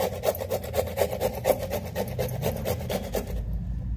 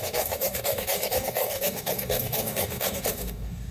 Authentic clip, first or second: first